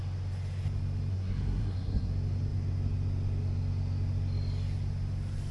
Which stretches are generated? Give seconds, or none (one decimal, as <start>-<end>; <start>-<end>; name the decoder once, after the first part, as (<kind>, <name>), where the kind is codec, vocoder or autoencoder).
1.1-2.1 (codec, SNAC)